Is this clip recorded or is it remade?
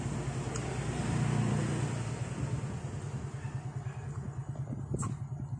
recorded